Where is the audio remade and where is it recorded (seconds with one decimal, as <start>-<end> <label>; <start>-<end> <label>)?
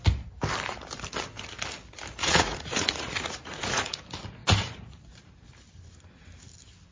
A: 0.0-2.2 recorded; 2.2-4.0 remade; 4.0-4.4 recorded; 4.4-5.2 remade; 5.2-6.9 recorded